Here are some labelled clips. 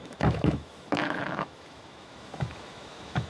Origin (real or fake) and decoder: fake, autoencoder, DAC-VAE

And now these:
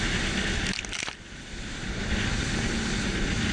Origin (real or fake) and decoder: real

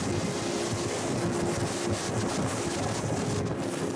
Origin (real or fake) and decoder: real